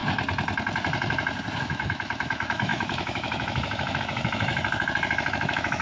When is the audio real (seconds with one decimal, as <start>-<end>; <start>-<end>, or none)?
0.0-1.6; 4.5-5.3